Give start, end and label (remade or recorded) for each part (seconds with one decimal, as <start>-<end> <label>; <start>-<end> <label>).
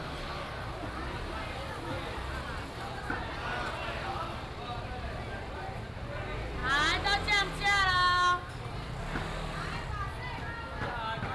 0.0-11.3 recorded